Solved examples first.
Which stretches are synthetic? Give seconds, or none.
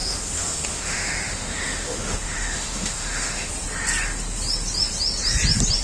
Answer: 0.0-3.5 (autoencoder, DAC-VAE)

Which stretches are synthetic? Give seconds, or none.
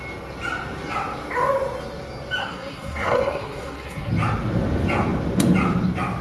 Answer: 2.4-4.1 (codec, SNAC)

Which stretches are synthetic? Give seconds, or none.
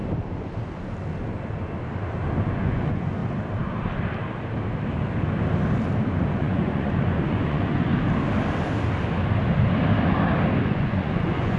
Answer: 2.5-3.2 (vocoder, Vocos); 6.2-7.9; 10.6-11.6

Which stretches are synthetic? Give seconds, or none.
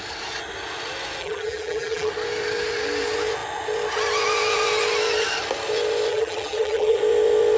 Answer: 1.2-2.1 (vocoder, BigVGAN v2); 6.1-7.0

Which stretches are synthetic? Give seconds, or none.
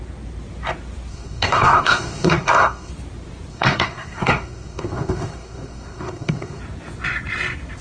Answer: 1.1-2.9 (codec, SNAC); 3.5-6.6